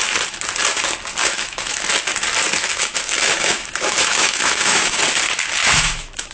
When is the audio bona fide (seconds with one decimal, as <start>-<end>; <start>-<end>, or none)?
0.0-1.2; 1.9-2.6; 5.0-5.6